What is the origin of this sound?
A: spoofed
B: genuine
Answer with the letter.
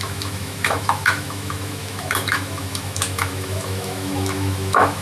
A